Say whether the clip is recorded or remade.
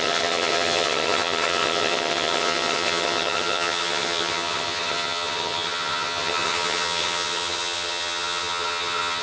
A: remade